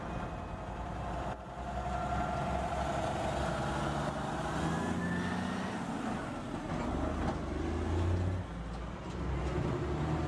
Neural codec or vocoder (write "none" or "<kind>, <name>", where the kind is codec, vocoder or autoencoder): none